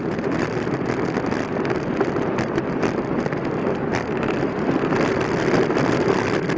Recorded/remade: recorded